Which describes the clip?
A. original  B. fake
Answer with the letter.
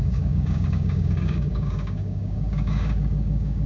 B